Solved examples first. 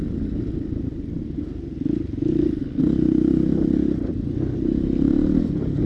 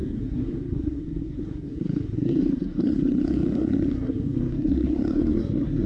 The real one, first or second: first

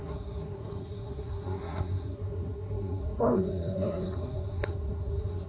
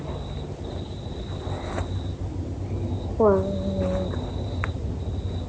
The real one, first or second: second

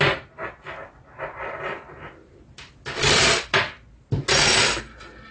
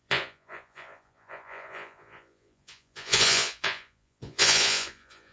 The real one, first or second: first